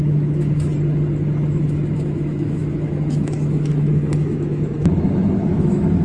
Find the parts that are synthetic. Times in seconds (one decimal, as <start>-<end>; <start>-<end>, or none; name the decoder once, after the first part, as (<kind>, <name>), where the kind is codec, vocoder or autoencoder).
0.0-0.7 (autoencoder, DAC-VAE); 1.5-6.0